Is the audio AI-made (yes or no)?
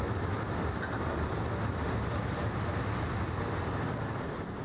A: no